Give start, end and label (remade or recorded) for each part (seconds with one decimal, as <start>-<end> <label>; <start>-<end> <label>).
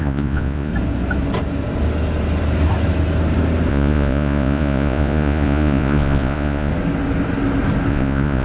0.0-0.7 remade; 0.7-3.7 recorded; 3.7-6.7 remade; 6.7-7.9 recorded; 7.9-8.4 remade